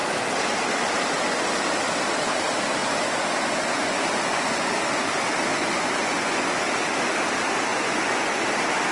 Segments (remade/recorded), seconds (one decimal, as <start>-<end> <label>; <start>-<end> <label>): 0.0-2.8 recorded; 2.8-4.7 remade; 4.7-5.5 recorded; 5.5-6.5 remade; 6.5-7.7 recorded; 7.7-8.4 remade; 8.4-8.9 recorded

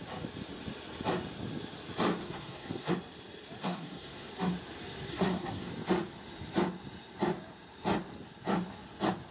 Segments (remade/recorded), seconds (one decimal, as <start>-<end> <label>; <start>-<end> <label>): 0.0-2.2 recorded; 2.2-2.9 remade; 2.9-3.6 recorded; 3.6-4.3 remade; 4.3-5.1 recorded; 5.1-5.7 remade; 5.7-9.3 recorded

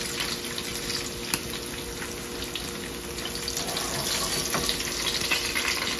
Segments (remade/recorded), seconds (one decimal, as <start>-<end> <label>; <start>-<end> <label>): 0.0-6.0 recorded

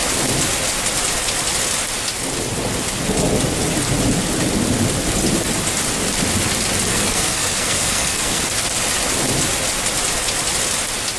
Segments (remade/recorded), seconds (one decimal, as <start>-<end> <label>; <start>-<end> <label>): 0.0-6.9 recorded; 6.9-8.4 remade; 8.4-11.2 recorded